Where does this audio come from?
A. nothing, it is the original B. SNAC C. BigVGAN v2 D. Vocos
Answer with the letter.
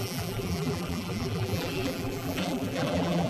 C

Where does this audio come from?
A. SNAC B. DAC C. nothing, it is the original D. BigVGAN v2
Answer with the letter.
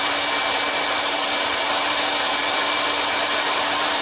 D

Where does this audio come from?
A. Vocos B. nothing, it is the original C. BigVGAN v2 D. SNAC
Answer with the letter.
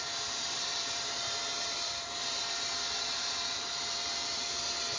C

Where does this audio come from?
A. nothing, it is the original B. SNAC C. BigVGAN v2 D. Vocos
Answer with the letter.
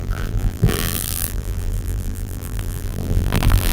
C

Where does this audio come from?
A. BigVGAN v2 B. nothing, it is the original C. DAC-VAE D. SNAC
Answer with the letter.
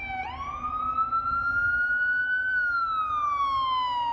B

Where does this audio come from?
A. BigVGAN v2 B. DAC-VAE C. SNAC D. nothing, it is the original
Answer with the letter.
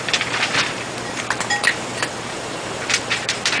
A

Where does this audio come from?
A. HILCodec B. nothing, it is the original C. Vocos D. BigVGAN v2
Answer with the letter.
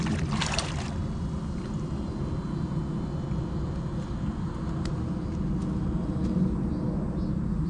B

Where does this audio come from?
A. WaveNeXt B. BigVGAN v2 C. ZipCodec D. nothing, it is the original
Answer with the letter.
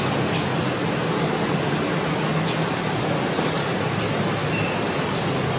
D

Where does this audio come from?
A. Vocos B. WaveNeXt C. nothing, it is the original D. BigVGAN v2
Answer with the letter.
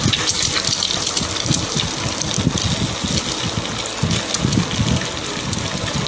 C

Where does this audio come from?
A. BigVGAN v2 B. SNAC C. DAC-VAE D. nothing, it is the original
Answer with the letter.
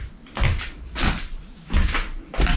A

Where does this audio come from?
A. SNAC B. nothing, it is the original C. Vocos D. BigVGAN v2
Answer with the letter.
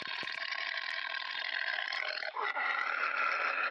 B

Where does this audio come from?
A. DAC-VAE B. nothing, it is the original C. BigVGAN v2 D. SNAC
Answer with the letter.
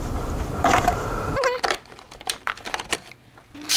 C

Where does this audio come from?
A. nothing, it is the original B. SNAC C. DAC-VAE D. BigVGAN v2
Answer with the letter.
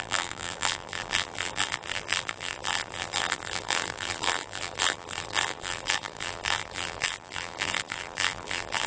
D